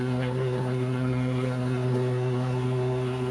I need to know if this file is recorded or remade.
remade